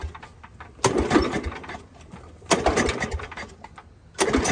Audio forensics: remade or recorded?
recorded